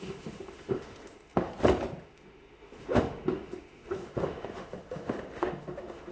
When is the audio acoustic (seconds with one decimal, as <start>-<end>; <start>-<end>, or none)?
1.5-2.0